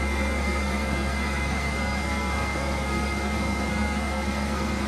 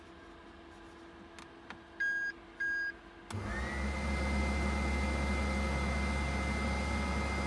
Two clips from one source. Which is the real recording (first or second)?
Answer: second